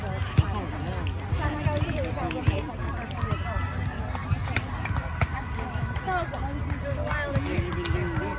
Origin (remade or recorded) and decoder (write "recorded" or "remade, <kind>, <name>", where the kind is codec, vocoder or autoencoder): recorded